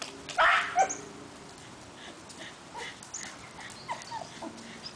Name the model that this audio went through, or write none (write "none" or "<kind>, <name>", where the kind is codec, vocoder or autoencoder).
none